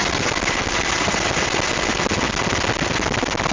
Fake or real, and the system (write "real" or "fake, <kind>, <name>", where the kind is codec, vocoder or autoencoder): real